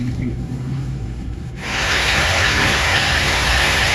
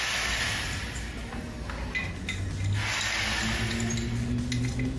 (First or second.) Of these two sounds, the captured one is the second